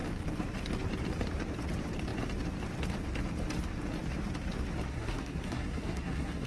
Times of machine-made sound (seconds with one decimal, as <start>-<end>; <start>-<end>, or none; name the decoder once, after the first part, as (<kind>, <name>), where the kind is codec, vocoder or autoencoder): 4.9-6.5 (codec, SNAC)